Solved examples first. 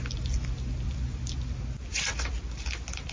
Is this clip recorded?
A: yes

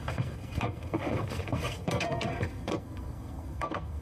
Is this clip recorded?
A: no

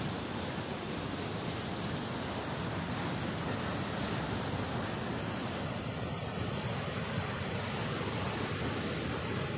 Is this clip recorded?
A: yes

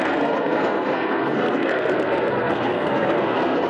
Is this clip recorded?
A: no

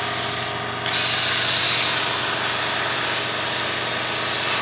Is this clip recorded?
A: yes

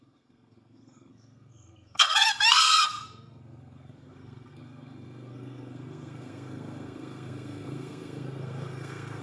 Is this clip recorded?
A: no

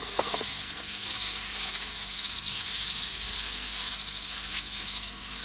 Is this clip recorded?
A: no